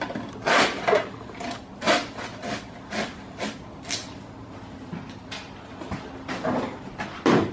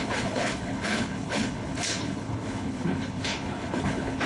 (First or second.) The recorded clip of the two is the first